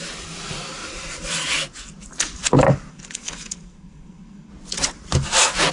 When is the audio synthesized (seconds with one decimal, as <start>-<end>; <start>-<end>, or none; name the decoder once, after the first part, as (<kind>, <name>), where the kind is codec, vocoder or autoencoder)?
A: 2.9-4.5 (codec, SNAC)